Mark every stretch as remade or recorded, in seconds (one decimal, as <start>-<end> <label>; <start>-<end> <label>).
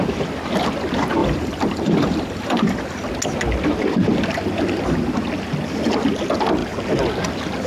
0.0-1.2 recorded; 1.2-3.1 remade; 3.1-7.7 recorded